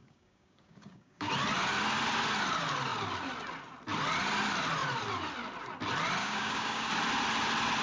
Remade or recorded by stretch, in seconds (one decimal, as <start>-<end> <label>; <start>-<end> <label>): 0.0-1.3 remade; 1.3-6.2 recorded; 6.2-6.9 remade; 6.9-7.8 recorded